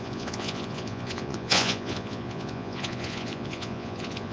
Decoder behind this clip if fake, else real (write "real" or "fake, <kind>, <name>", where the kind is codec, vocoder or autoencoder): fake, vocoder, Vocos